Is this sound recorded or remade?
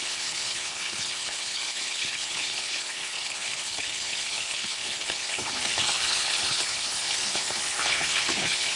remade